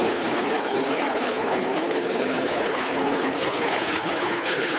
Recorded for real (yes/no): no